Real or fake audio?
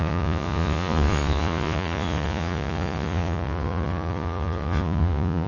fake